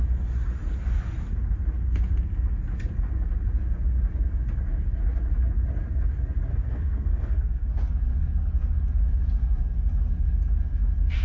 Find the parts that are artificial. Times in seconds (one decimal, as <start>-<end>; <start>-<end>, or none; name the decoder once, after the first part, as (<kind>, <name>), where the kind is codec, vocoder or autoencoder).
6.5-7.7 (codec, SNAC)